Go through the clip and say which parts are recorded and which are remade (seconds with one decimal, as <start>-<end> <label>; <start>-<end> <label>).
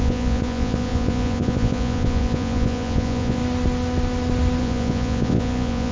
0.0-3.4 remade; 3.4-4.6 recorded; 4.6-5.9 remade